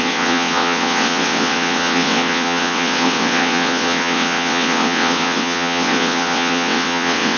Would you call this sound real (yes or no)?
no